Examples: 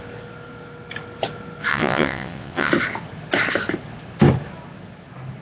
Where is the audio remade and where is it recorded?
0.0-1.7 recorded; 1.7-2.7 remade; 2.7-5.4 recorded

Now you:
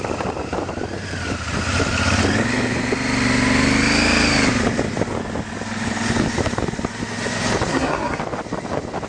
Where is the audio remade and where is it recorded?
0.0-7.7 recorded; 7.7-8.2 remade; 8.2-9.1 recorded

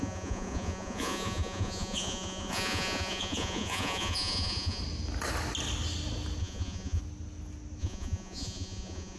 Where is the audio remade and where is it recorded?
0.0-4.8 remade; 4.8-6.4 recorded; 6.4-7.0 remade; 7.0-7.8 recorded; 7.8-9.2 remade

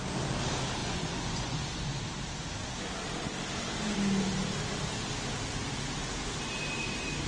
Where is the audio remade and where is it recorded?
0.0-0.8 recorded; 0.8-1.9 remade; 1.9-7.3 recorded

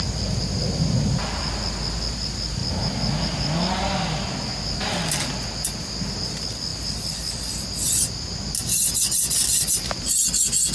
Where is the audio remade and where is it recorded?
0.0-10.7 recorded

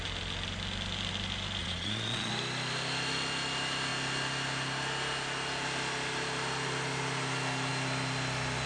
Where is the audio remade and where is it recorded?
0.0-1.6 recorded; 1.6-2.3 remade; 2.3-8.7 recorded

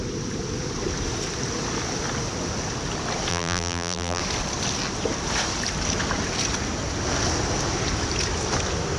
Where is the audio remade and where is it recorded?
0.0-3.3 recorded; 3.3-4.2 remade; 4.2-9.0 recorded